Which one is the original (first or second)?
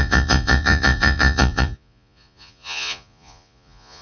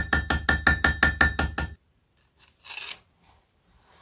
second